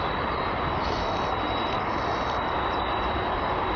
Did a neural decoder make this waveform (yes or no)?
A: no